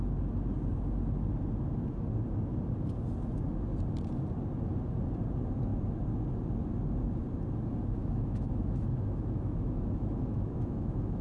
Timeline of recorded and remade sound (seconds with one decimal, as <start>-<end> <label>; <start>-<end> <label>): 0.0-8.0 recorded; 8.0-11.2 remade